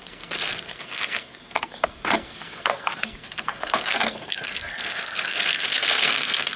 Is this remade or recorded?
remade